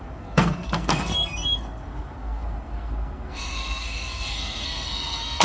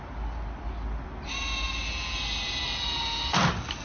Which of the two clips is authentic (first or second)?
second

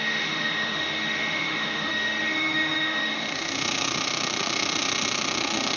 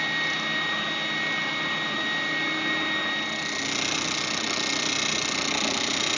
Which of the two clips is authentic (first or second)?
second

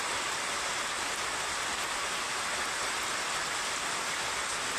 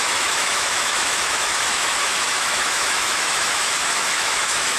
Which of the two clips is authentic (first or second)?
first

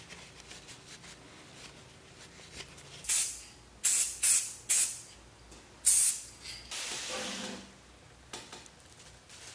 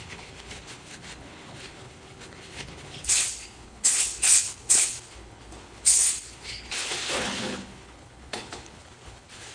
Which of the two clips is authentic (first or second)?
first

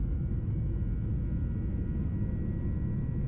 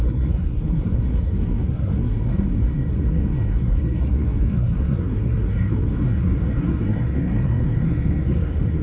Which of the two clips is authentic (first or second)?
first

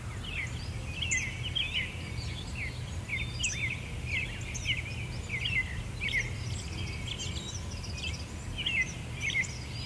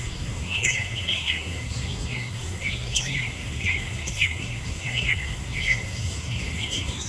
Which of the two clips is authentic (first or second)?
first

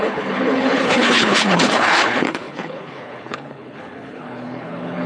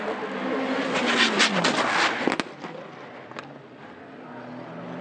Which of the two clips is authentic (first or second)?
second